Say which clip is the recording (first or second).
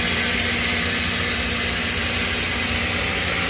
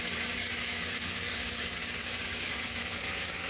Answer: first